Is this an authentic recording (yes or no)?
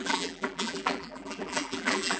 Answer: no